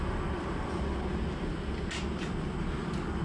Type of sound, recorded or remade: recorded